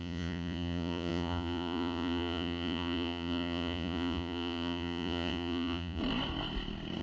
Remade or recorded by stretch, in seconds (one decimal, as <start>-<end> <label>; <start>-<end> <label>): 0.0-6.0 remade; 6.0-7.0 recorded